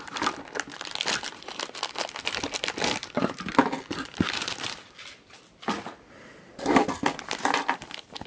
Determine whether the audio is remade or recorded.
recorded